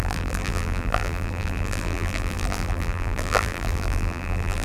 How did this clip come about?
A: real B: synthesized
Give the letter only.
B